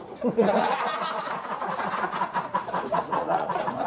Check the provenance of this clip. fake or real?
fake